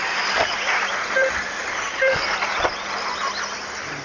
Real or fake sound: real